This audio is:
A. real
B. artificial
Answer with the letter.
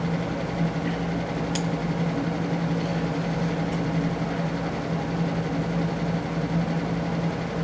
A